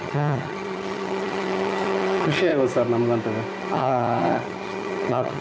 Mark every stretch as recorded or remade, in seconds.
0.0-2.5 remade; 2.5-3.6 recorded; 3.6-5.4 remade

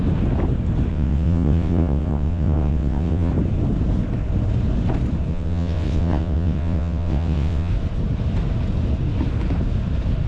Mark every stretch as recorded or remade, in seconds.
0.0-0.9 recorded; 0.9-3.3 remade; 3.3-5.3 recorded; 5.3-7.7 remade; 7.7-10.3 recorded